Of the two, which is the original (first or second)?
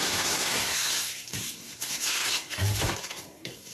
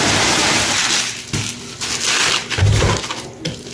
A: second